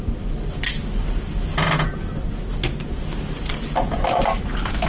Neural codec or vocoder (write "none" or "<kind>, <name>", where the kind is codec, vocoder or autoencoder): none